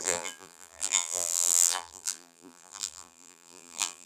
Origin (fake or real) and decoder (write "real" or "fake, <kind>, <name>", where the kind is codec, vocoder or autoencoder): fake, vocoder, BigVGAN v2